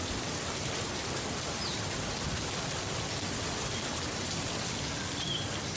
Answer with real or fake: fake